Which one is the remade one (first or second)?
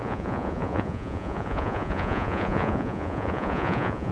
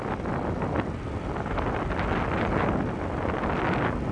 first